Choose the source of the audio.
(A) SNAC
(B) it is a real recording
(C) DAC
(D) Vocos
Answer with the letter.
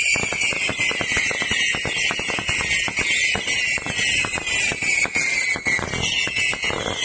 B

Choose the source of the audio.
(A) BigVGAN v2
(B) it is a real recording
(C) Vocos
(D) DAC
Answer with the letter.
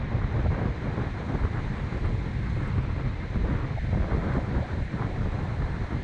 B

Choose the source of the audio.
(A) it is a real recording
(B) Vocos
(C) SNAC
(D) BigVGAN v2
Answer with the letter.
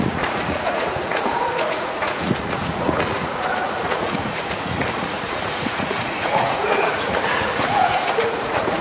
B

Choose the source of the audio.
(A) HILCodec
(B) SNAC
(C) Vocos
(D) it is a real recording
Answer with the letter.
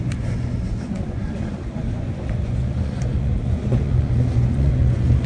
C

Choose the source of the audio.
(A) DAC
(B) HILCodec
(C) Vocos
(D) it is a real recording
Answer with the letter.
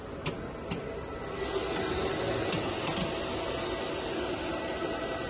D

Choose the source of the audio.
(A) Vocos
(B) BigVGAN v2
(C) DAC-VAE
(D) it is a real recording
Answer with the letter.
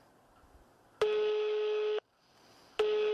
D